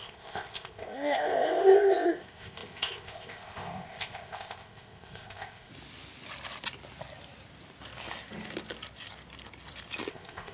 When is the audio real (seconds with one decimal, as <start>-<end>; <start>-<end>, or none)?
5.7-10.1